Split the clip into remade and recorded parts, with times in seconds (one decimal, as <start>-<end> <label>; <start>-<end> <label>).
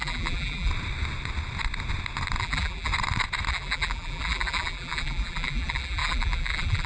0.0-0.7 remade; 0.7-2.4 recorded; 2.4-2.9 remade; 2.9-3.5 recorded; 3.5-6.9 remade